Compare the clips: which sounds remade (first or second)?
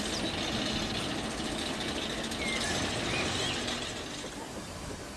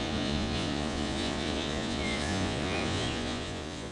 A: second